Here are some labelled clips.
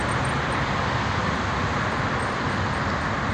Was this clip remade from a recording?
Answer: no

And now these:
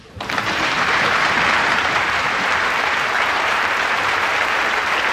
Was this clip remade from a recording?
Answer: yes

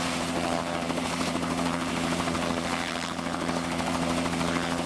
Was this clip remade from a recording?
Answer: yes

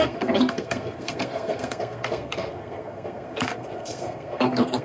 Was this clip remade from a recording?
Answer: yes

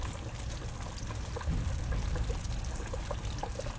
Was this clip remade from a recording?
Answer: no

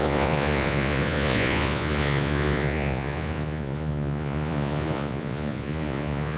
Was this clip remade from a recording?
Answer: yes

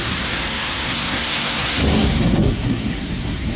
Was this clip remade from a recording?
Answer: yes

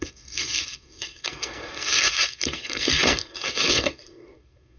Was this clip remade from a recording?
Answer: yes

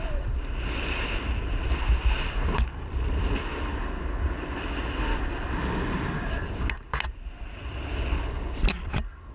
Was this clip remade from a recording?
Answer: no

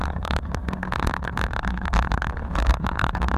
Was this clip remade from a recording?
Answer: yes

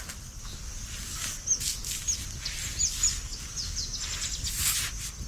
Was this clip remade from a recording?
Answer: no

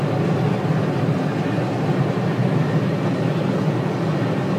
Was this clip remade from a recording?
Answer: no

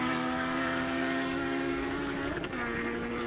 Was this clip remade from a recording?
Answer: yes